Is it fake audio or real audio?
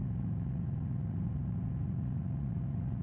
fake